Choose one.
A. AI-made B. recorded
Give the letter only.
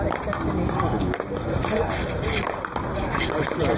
B